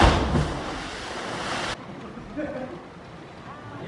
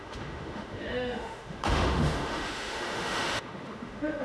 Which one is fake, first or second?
second